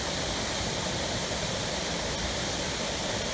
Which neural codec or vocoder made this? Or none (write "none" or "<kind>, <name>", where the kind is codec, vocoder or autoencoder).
none